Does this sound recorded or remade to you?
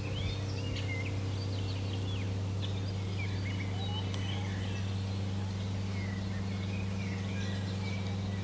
recorded